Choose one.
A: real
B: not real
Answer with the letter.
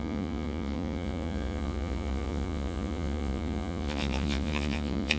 B